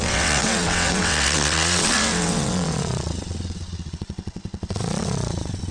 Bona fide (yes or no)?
no